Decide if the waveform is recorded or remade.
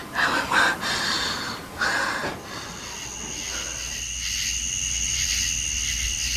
recorded